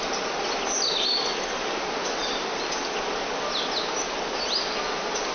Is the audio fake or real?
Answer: real